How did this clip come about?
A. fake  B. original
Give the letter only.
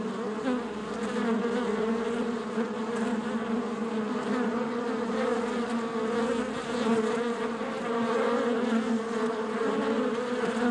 B